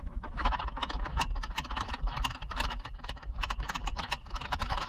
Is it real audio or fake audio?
fake